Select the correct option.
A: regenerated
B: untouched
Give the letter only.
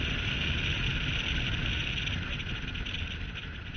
B